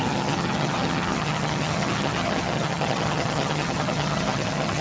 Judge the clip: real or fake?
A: fake